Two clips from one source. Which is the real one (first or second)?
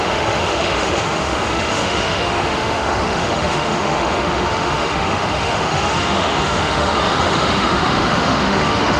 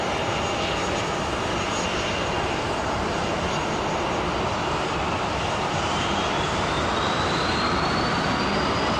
second